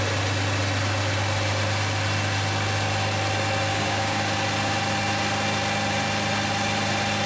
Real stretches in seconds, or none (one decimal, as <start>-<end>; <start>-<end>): 0.0-3.7; 4.2-7.3